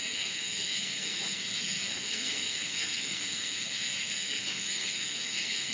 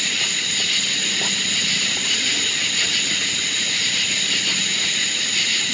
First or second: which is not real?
first